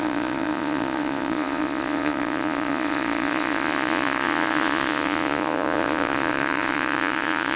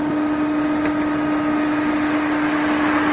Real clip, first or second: second